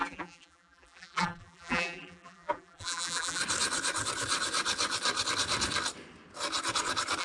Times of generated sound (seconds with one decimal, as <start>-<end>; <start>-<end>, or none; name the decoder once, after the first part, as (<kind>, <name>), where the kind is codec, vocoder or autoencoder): 0.0-3.4 (vocoder, BigVGAN v2)